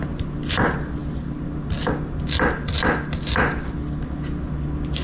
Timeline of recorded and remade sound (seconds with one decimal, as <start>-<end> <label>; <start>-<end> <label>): 0.0-5.0 recorded